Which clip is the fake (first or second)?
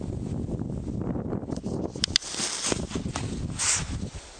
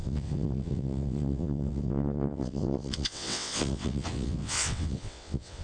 second